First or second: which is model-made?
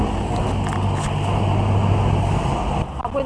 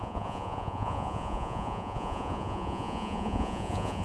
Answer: second